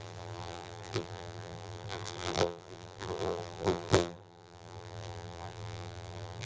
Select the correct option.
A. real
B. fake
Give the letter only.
B